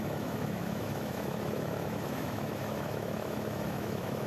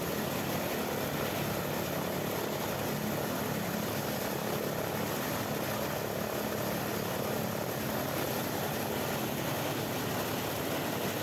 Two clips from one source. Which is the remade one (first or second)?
first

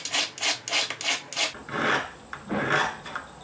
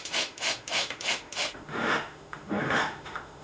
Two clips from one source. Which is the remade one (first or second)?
second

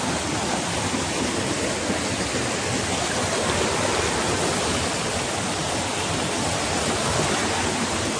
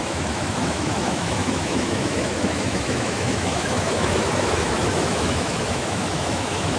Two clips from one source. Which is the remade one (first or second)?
second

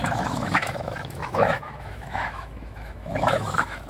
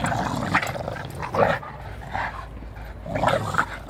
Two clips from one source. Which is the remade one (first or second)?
first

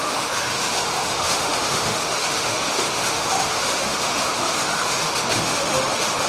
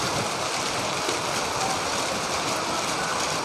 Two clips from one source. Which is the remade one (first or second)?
first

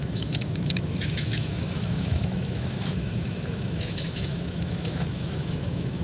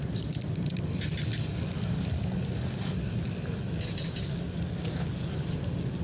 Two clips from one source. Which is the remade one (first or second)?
first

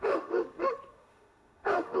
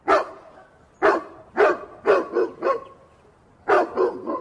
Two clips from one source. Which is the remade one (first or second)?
first